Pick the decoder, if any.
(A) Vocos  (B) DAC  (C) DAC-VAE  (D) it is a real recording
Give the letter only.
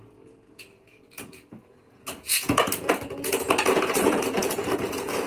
A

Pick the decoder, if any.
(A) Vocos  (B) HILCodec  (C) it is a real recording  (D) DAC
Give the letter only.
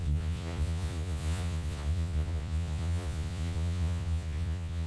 A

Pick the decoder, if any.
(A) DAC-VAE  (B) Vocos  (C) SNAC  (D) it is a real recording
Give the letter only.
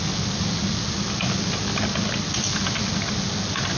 D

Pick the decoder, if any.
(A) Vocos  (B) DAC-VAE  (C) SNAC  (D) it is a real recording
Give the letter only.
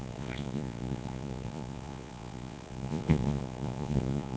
A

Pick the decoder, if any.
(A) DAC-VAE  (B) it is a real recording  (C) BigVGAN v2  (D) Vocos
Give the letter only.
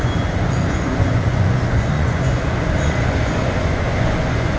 D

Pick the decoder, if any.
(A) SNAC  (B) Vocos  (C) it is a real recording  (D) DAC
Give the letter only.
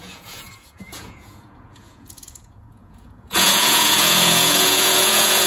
B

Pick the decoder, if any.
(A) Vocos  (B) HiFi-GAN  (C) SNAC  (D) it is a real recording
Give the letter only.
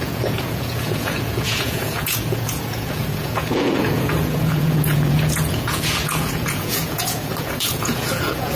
A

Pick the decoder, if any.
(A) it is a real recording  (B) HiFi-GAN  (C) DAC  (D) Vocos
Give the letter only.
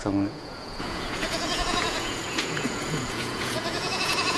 D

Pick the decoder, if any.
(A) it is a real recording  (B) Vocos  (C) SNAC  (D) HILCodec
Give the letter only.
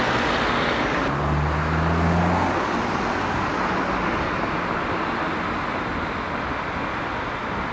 A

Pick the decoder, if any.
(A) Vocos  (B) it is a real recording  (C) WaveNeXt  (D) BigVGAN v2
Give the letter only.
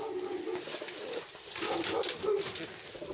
B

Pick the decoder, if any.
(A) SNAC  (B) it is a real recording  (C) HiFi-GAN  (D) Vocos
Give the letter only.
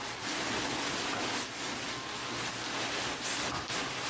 B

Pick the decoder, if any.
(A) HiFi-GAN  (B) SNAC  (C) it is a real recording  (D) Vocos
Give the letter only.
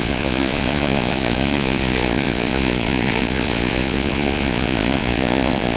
D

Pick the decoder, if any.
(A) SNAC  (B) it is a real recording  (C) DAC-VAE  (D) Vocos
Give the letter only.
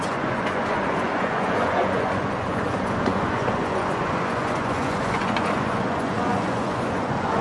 D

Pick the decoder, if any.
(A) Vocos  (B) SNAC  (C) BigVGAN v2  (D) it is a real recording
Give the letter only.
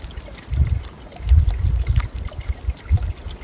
D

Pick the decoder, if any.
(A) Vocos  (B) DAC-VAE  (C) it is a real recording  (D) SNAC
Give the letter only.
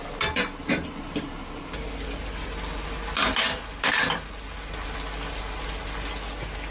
C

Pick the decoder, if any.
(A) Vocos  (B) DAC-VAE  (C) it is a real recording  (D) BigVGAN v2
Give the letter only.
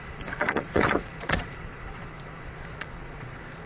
A